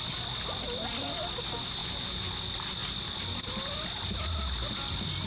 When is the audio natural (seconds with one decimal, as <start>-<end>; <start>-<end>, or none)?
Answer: 0.0-1.8; 2.3-5.3